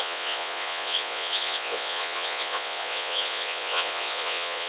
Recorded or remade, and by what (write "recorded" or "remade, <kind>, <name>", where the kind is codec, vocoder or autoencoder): remade, vocoder, Vocos